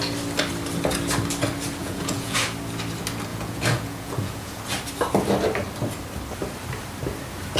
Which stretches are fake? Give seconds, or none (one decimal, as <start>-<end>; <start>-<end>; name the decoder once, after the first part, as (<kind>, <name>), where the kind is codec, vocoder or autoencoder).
1.8-2.4 (vocoder, Vocos); 3.3-4.6

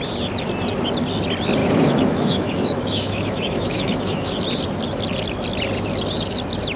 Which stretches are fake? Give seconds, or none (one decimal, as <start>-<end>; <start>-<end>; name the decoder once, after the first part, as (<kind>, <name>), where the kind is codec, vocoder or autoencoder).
1.6-4.3 (autoencoder, DAC-VAE)

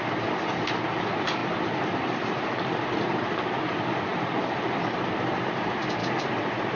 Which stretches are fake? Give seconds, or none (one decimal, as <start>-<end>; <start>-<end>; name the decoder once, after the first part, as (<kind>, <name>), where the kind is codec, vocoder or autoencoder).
4.1-5.1 (vocoder, BigVGAN v2)

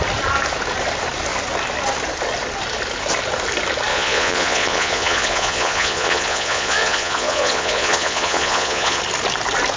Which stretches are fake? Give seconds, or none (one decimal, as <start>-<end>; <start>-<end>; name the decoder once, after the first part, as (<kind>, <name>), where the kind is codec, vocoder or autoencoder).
3.9-9.0 (vocoder, Vocos)